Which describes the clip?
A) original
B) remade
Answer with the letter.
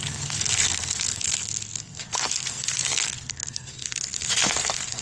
B